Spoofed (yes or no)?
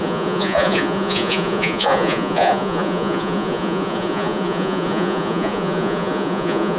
yes